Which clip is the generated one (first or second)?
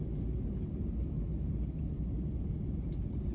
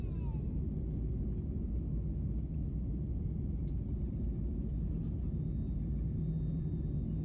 first